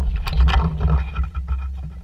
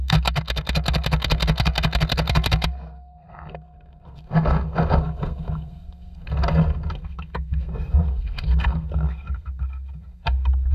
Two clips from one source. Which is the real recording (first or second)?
first